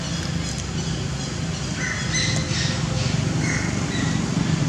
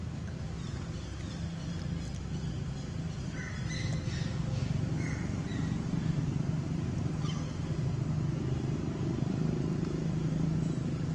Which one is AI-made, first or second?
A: second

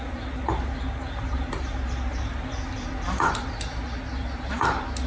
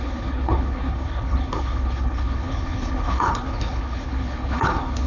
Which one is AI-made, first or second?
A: second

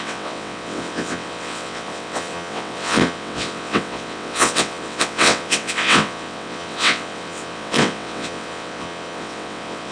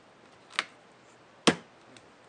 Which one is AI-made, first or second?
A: first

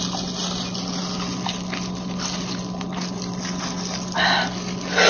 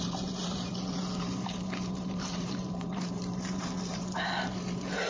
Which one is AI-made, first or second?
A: second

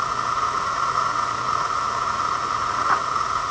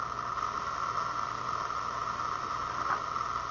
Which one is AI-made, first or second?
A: first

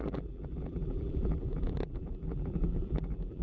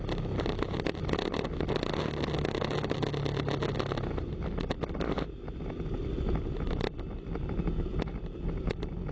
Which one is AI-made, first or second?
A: first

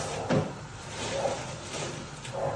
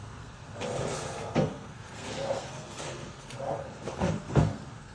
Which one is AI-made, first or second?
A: second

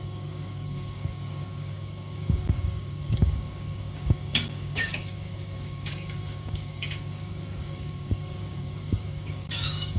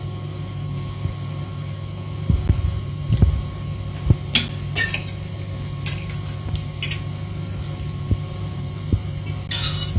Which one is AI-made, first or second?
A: first